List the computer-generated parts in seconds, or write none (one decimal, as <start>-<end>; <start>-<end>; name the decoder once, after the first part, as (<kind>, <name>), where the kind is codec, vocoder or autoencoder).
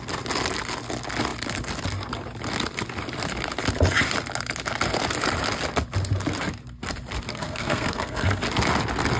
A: 7.3-8.4 (codec, SNAC)